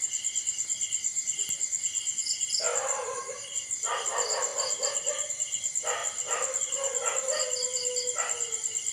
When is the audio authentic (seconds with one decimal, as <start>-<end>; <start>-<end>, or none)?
0.0-1.1; 2.2-8.9